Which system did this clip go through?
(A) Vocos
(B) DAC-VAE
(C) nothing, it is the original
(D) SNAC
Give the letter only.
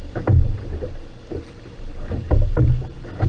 C